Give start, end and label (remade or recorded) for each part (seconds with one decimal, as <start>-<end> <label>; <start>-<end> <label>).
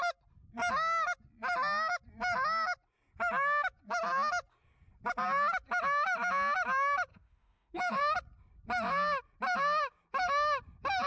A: 0.0-7.1 recorded; 7.1-8.0 remade; 8.0-11.1 recorded